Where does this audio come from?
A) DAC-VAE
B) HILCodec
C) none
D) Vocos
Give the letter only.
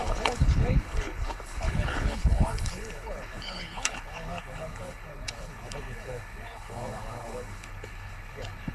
B